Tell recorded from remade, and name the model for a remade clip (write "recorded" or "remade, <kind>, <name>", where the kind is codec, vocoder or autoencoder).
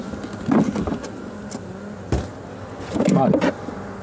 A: recorded